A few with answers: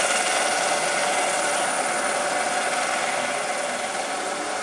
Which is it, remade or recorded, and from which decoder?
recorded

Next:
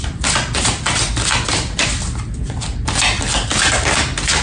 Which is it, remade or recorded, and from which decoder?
recorded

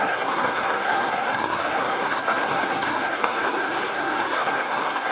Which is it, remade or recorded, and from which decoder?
remade, codec, SNAC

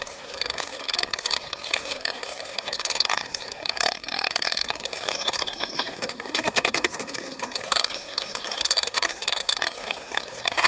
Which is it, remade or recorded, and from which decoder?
remade, codec, SNAC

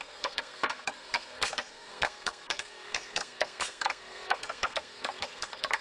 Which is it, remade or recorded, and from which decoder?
remade, codec, SNAC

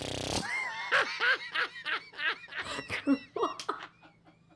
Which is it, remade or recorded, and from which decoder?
recorded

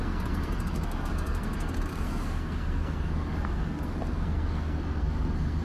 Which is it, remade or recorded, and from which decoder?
remade, codec, SNAC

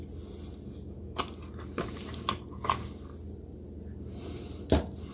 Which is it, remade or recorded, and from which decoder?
recorded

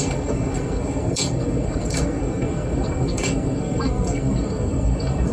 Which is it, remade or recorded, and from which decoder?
remade, codec, SNAC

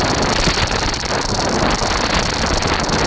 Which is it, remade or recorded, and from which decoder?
recorded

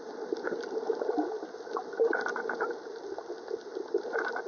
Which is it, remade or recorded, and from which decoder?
recorded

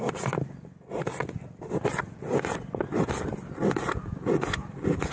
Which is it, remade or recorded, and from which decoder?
recorded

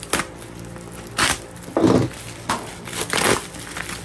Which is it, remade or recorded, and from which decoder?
recorded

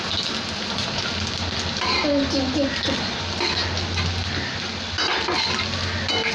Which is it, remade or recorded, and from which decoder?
recorded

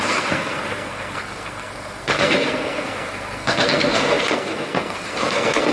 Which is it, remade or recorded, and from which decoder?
remade, codec, SNAC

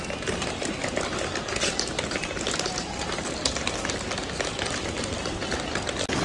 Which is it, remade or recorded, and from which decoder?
recorded